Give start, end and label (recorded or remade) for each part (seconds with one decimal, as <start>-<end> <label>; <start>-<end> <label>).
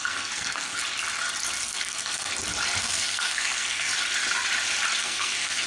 0.0-0.8 remade; 0.8-1.6 recorded; 1.6-2.3 remade; 2.3-2.8 recorded; 2.8-3.9 remade; 3.9-5.0 recorded; 5.0-5.7 remade